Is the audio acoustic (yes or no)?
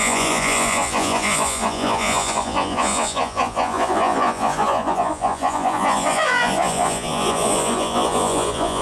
no